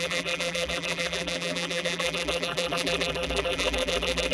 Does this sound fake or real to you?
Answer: fake